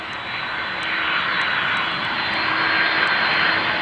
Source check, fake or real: real